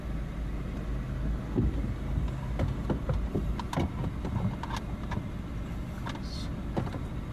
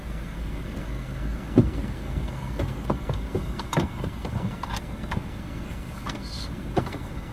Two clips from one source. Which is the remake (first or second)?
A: second